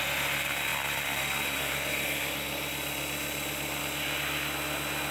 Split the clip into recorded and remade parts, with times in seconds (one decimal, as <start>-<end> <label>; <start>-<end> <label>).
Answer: 0.0-5.1 remade